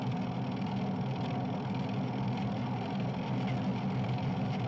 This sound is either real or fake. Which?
real